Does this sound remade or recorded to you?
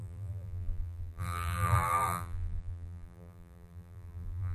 remade